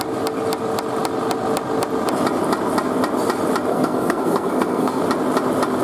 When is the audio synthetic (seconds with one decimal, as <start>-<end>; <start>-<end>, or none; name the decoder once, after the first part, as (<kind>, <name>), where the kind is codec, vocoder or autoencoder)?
3.7-5.0 (codec, SNAC)

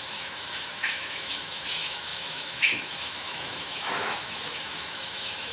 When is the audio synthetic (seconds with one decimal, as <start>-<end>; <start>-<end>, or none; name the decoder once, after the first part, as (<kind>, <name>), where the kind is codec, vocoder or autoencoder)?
0.0-5.5 (autoencoder, DAC-VAE)

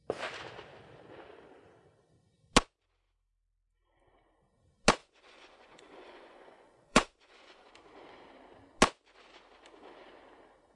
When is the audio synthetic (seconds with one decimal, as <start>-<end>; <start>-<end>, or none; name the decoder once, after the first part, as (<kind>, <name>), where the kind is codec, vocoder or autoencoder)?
5.0-7.7 (vocoder, Vocos)

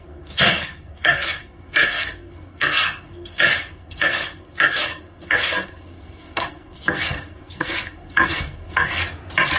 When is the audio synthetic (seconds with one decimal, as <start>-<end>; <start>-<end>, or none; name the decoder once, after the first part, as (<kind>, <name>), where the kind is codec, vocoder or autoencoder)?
0.0-9.0 (codec, SNAC)